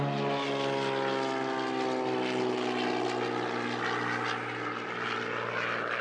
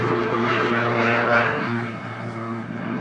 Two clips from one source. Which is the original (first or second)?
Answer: first